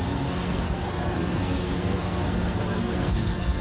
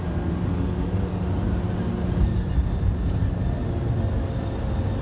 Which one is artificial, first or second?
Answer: first